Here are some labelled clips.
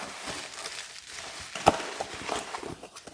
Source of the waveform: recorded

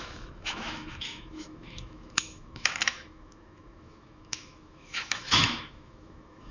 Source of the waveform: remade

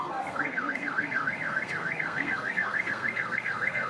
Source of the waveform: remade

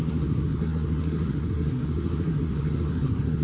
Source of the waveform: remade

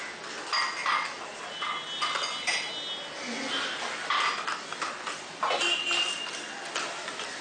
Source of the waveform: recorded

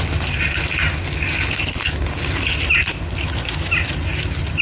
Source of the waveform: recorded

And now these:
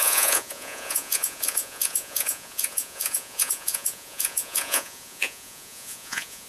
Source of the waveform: remade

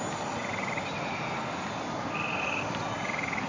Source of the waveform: recorded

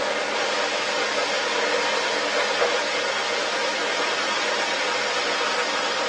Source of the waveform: recorded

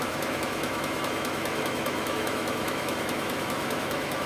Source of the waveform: remade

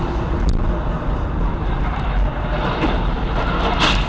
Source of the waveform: recorded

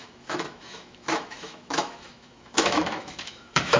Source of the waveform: remade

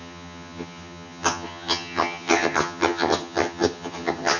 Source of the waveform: remade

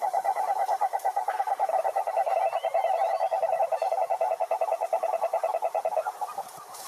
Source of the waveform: remade